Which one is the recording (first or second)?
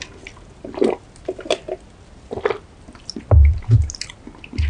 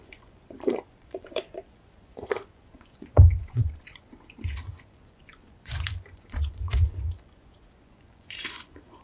first